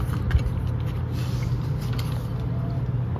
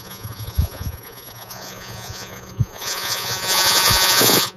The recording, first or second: first